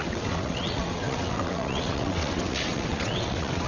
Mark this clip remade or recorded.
remade